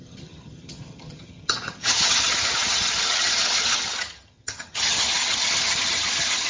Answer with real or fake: fake